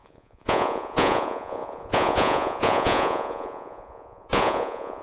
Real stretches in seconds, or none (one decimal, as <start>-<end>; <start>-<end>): none